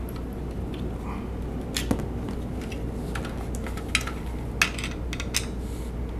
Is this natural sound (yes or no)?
yes